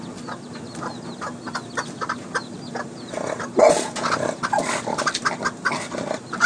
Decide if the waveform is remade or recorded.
recorded